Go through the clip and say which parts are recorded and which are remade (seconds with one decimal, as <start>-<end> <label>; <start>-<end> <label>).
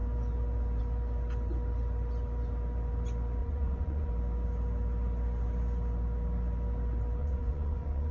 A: 0.0-3.4 recorded; 3.4-4.1 remade; 4.1-7.2 recorded; 7.2-8.1 remade